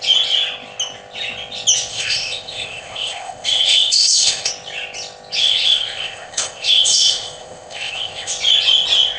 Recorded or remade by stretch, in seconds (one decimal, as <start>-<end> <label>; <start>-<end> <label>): 0.0-1.9 recorded; 1.9-4.5 remade; 4.5-5.4 recorded; 5.4-8.3 remade; 8.3-9.2 recorded